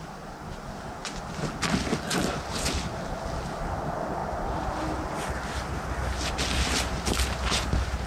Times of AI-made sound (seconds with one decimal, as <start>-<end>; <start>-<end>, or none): none